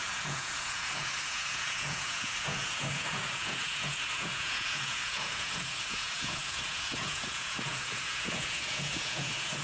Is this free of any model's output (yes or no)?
no